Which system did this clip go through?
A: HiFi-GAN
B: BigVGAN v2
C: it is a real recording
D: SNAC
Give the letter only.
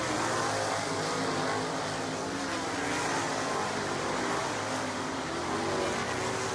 C